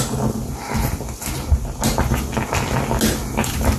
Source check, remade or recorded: recorded